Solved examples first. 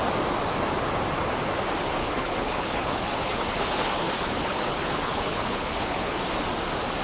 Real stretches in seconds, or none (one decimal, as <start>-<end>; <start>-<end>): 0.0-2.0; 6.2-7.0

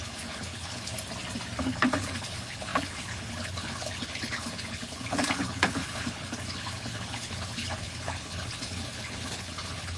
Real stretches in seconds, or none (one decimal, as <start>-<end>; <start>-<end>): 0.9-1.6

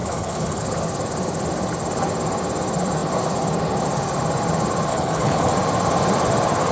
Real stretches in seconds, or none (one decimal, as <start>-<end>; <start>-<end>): 0.6-4.9; 5.5-6.7